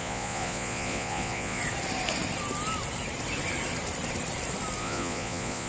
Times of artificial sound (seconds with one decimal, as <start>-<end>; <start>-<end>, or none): 0.0-1.6; 4.8-5.7